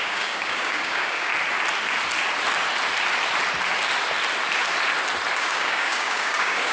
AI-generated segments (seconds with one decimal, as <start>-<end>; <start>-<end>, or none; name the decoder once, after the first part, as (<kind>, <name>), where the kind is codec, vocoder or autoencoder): 0.0-1.3 (codec, DAC); 5.3-6.7